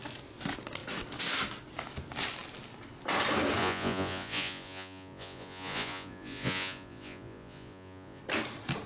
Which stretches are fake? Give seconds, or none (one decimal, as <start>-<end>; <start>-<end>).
3.6-8.2

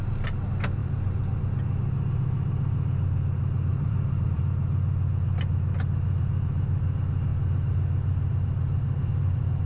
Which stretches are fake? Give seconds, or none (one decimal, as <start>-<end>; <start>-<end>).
0.8-1.4; 3.7-4.4